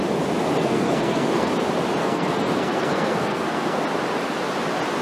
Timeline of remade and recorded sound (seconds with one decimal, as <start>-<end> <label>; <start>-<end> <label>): 0.0-0.6 recorded; 0.6-1.5 remade; 1.5-2.0 recorded; 2.0-3.8 remade; 3.8-5.0 recorded